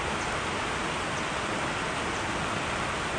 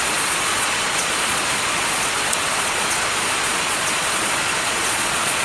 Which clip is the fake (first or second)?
second